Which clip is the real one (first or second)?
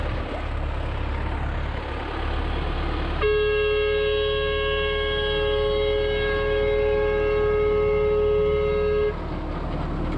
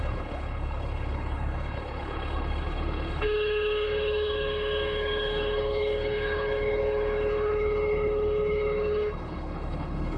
first